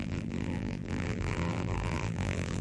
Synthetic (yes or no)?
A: yes